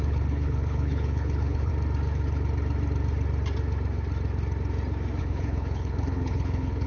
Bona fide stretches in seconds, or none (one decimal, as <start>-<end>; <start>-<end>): 1.7-5.2